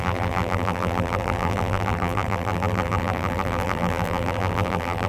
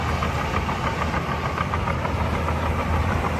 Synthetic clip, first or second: first